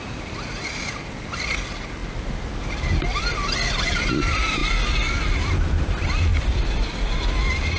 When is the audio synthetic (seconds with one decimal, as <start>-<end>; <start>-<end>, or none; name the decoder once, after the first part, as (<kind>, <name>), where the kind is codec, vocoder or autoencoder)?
none